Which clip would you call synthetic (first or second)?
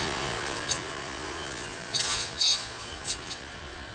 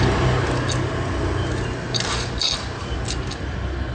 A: first